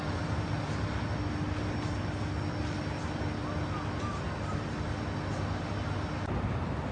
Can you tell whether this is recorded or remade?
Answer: recorded